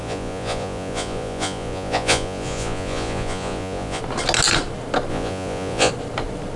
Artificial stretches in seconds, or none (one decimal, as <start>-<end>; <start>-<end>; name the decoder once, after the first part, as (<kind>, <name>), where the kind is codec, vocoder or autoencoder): 0.0-4.0 (vocoder, Vocos); 5.1-5.9